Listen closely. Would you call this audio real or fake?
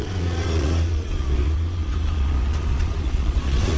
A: fake